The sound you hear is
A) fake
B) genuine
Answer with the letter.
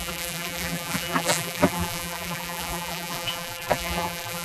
A